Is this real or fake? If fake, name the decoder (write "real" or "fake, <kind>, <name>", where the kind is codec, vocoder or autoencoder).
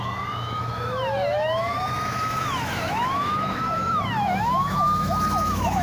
fake, autoencoder, DAC-VAE